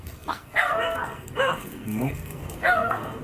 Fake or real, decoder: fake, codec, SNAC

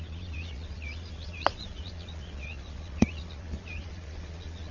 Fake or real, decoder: fake, vocoder, Vocos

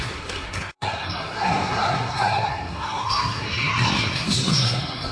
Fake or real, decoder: fake, codec, SNAC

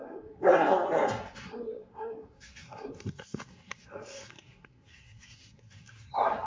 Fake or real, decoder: fake, codec, SNAC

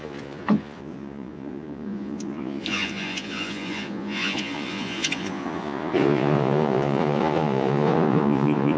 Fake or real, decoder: fake, vocoder, Vocos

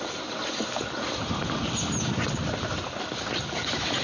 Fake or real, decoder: real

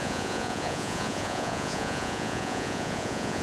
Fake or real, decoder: fake, vocoder, Vocos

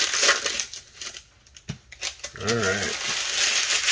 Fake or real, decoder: real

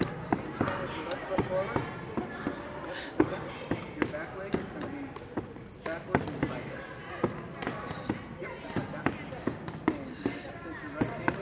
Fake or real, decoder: real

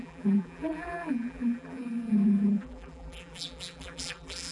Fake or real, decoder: fake, vocoder, BigVGAN v2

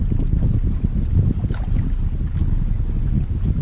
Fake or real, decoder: real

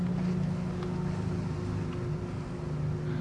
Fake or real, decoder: real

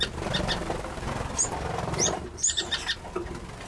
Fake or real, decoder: real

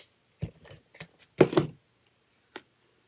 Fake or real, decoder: real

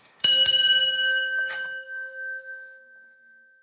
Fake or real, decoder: fake, codec, DAC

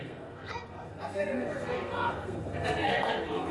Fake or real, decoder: fake, codec, SNAC